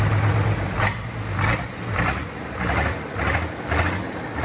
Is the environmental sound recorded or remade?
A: recorded